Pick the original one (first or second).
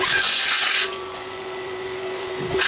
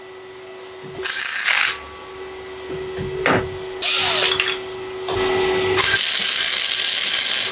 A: second